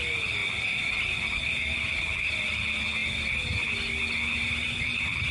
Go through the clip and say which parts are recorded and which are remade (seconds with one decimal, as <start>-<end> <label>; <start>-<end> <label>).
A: 0.0-0.4 recorded; 0.4-2.3 remade; 2.3-3.0 recorded; 3.0-5.3 remade